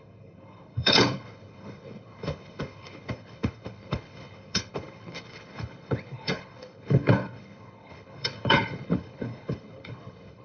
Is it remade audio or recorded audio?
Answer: remade